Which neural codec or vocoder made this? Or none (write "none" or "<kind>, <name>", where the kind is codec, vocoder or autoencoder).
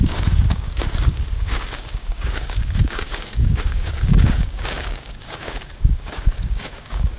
codec, DAC